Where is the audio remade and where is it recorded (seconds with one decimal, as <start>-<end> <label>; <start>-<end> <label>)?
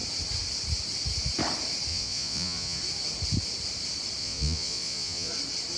0.0-1.9 recorded; 1.9-2.8 remade; 2.8-4.2 recorded; 4.2-5.3 remade; 5.3-5.8 recorded